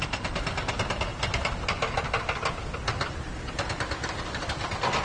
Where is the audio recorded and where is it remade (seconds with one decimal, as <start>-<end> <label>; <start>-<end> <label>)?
0.0-1.1 recorded; 1.1-3.5 remade; 3.5-5.0 recorded